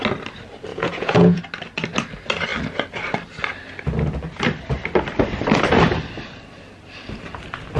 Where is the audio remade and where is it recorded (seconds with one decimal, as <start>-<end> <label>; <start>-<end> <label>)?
0.0-0.7 recorded; 0.7-1.4 remade; 1.4-7.8 recorded